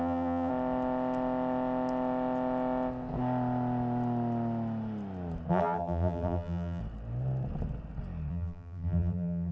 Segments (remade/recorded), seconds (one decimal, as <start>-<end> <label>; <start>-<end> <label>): 0.0-0.5 remade; 0.5-5.5 recorded; 5.5-6.8 remade; 6.8-8.3 recorded; 8.3-9.5 remade